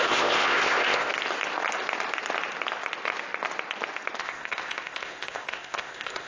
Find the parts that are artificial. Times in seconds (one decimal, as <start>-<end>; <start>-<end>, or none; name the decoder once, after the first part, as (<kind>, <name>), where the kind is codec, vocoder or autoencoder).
0.0-1.1 (codec, ZipCodec); 4.2-6.3